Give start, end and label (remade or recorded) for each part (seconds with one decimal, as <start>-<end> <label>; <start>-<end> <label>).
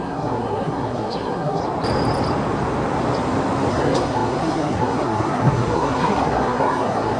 0.0-1.6 remade; 1.6-3.7 recorded; 3.7-7.2 remade